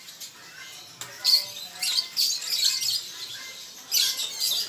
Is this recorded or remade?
recorded